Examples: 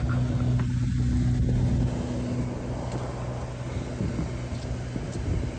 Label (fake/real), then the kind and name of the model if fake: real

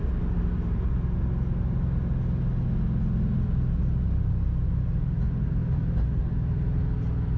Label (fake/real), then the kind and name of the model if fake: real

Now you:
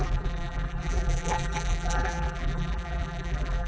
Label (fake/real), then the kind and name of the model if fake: fake, vocoder, BigVGAN v2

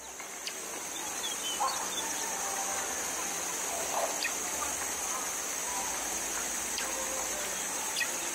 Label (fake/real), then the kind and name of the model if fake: real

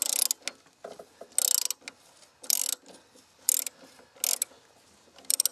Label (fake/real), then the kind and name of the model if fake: real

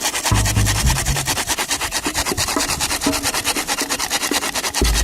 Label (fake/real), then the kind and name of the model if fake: real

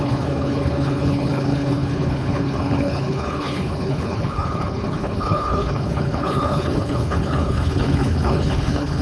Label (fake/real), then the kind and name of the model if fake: fake, codec, HILCodec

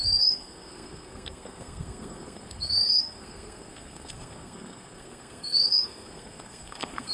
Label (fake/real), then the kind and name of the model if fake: fake, codec, SNAC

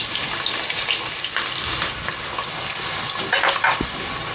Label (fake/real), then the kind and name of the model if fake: real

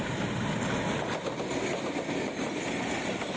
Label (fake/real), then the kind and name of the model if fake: real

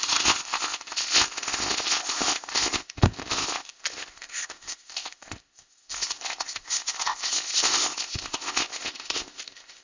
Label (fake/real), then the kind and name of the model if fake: fake, codec, ZipCodec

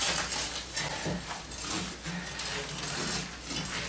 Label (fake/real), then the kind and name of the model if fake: real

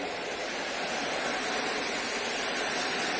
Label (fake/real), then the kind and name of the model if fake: real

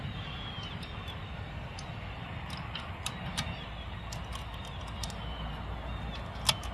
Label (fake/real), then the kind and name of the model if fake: real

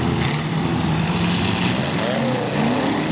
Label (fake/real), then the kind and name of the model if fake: real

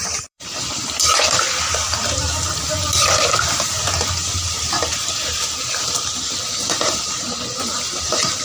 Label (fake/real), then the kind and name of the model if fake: fake, vocoder, BigVGAN v2